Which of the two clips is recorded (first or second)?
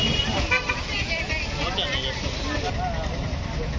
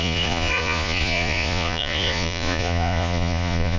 first